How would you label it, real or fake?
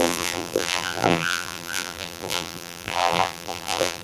fake